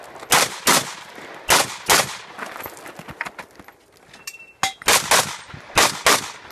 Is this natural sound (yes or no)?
yes